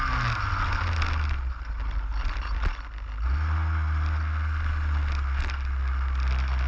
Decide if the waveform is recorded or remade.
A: recorded